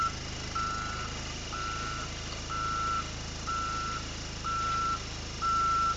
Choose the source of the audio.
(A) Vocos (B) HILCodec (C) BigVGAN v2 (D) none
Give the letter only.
D